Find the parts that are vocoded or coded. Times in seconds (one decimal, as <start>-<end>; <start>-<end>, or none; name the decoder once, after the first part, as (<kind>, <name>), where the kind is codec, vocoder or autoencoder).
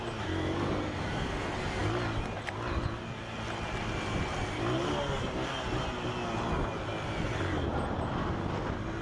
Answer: none